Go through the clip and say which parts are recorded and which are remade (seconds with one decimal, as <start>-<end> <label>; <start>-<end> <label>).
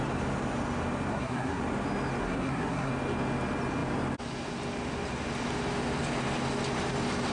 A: 0.0-1.1 recorded; 1.1-1.6 remade; 1.6-2.2 recorded; 2.2-2.9 remade; 2.9-7.3 recorded